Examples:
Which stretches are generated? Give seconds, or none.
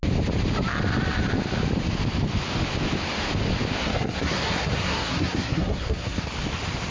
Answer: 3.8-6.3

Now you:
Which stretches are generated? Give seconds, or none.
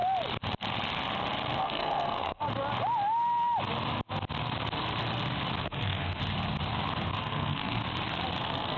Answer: 1.6-2.4; 5.6-6.2; 7.2-7.8; 8.4-8.8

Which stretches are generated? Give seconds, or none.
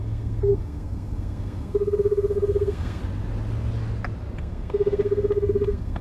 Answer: 0.0-3.0; 4.4-6.0